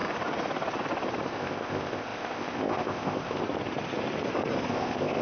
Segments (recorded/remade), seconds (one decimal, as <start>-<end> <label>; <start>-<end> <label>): 0.0-1.3 recorded; 1.3-3.4 remade; 3.4-4.7 recorded; 4.7-5.2 remade